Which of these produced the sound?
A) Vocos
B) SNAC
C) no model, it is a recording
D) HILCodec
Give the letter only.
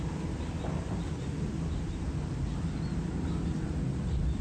C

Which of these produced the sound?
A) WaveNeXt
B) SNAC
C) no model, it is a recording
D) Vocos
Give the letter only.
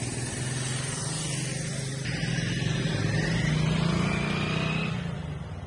C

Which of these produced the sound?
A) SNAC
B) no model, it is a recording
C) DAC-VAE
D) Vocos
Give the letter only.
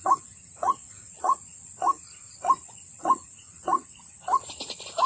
D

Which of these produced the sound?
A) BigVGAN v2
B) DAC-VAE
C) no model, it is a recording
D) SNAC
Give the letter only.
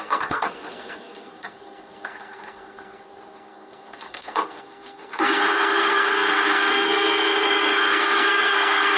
D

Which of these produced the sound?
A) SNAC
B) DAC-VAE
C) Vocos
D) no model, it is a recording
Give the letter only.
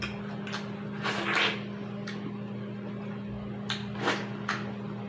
D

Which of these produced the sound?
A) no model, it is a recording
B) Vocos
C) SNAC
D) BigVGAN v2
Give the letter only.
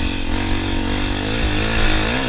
A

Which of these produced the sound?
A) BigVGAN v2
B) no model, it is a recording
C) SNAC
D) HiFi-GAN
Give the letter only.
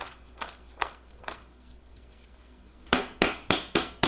C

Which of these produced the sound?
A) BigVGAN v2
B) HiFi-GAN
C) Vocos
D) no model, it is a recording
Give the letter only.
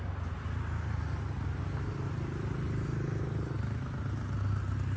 D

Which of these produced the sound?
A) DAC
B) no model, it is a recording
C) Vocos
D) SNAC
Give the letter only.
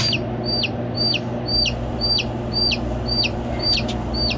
B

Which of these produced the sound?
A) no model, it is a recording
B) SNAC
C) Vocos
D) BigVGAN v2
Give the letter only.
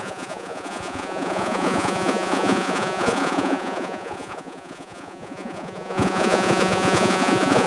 C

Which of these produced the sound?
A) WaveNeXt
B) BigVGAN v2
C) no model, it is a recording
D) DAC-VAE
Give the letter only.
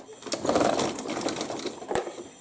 C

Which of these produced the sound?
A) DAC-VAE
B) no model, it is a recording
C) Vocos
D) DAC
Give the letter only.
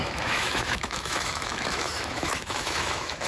A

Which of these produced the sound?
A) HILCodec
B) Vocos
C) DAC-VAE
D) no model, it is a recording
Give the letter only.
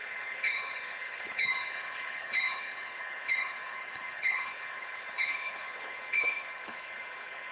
A